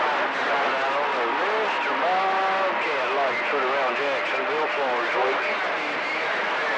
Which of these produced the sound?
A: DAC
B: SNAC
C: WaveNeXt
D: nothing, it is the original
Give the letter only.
D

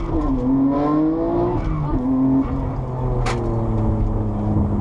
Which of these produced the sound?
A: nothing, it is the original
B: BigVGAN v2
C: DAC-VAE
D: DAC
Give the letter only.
A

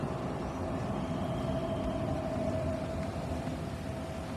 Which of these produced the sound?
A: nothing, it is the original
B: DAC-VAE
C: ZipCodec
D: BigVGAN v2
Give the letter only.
A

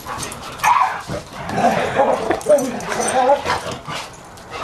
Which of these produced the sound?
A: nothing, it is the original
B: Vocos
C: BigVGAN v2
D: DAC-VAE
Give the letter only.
A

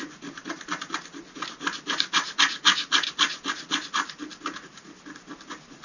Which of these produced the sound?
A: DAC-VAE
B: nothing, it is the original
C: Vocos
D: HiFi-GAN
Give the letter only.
B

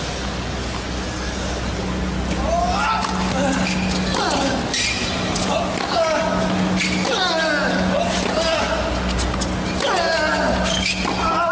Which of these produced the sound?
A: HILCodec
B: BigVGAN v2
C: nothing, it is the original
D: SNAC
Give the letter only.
C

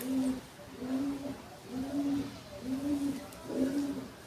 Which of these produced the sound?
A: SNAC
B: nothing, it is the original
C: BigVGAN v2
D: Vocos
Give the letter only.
B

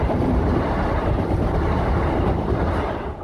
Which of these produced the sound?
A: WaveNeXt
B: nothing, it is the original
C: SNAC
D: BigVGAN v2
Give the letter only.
D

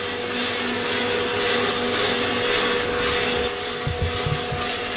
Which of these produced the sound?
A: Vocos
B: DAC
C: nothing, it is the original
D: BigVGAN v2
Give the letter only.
C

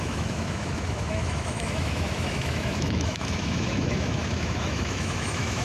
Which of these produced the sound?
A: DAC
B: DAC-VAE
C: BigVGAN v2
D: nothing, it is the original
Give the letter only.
B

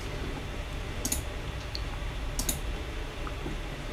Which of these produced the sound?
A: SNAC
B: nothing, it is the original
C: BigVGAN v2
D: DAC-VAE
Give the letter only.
B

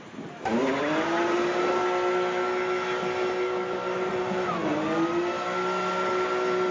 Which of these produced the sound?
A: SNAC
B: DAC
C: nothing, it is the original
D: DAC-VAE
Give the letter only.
C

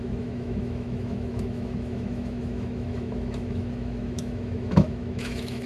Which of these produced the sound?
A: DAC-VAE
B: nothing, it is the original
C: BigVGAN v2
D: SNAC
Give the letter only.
A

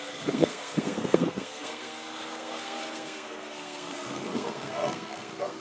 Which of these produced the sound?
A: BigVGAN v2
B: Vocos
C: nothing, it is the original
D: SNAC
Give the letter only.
D